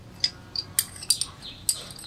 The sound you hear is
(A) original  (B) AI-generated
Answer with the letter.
A